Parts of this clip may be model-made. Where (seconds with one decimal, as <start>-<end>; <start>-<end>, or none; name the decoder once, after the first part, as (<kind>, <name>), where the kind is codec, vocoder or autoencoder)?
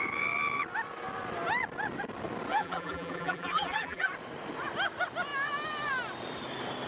2.5-4.1 (vocoder, BigVGAN v2)